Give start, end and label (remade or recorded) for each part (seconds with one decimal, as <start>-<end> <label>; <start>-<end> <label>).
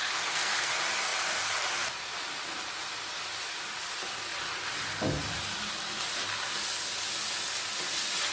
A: 0.0-0.7 remade; 0.7-8.3 recorded